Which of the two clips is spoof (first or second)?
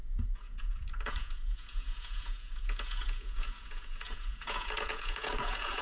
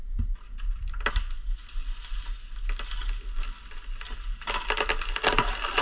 first